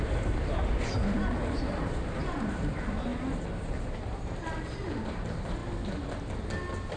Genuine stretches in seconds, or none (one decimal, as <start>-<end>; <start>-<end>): 5.6-7.0